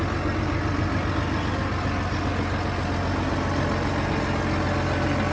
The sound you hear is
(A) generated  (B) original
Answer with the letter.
B